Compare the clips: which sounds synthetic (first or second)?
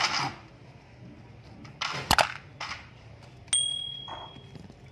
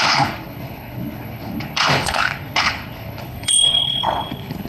second